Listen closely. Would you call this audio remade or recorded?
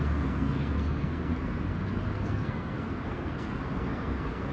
remade